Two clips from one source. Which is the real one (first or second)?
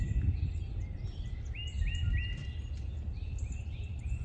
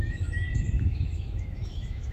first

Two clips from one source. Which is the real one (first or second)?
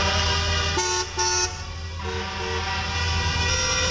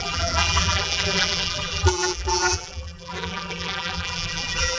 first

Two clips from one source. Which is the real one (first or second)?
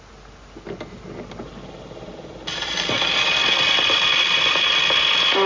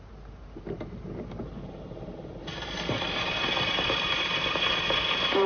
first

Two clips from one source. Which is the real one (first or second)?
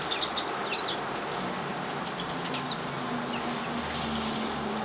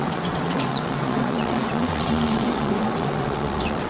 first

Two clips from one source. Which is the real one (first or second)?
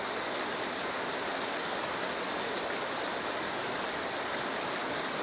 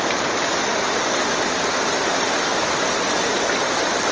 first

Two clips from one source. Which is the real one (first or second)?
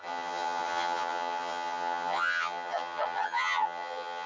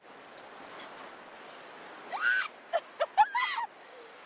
second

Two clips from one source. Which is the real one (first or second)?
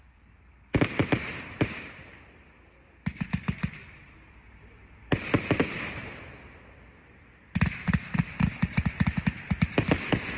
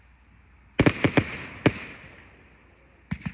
second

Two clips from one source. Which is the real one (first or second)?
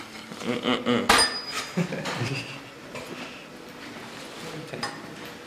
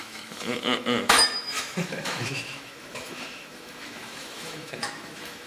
first